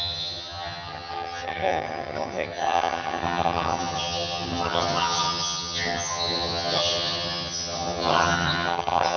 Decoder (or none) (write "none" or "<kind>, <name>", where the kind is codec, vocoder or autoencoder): vocoder, HiFi-GAN